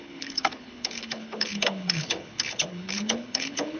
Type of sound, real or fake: fake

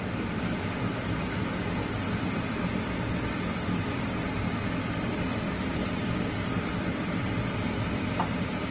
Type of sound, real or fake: fake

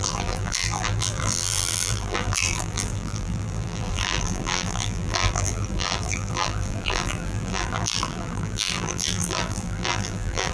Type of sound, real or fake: fake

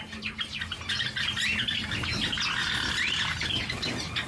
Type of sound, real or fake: real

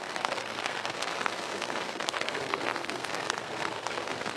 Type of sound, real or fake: fake